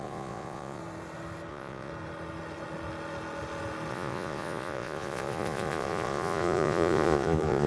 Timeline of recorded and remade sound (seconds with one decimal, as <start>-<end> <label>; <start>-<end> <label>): 0.0-0.8 remade; 0.8-1.5 recorded; 1.5-1.9 remade; 1.9-3.9 recorded; 3.9-7.7 remade